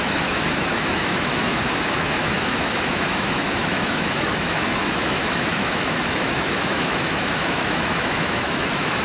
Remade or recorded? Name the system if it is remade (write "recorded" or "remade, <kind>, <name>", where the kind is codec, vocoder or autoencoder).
remade, autoencoder, DAC-VAE